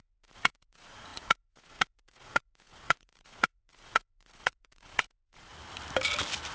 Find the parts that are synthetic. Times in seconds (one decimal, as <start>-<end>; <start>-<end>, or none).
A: 0.0-5.5